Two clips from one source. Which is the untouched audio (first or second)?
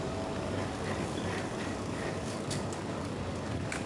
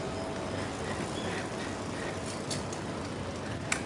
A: second